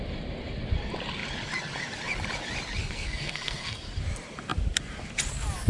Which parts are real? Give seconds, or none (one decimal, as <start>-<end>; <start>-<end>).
0.0-2.8; 3.8-5.7

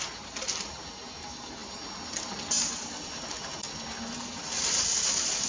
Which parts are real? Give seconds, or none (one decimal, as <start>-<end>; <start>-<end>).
0.0-5.5

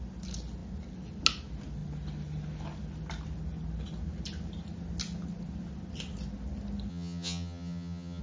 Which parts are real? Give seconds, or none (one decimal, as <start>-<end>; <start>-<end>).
0.0-6.9

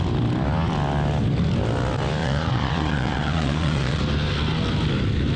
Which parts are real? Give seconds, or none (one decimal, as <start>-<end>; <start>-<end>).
0.0-2.2; 4.0-5.4

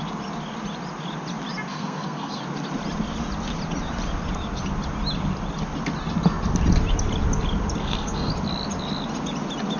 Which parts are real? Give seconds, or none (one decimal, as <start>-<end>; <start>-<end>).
0.0-1.7; 2.4-7.8; 8.3-9.8

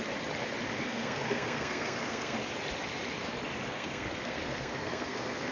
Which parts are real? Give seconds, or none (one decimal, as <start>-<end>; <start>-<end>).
0.0-0.8; 2.4-3.7

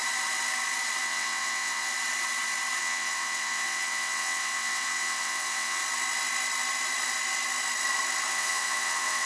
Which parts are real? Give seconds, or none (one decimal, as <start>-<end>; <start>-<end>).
0.0-1.0; 1.9-2.8; 5.8-8.3

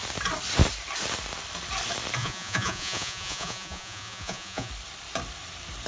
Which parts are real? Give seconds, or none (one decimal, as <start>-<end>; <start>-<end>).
0.0-2.2; 4.7-5.9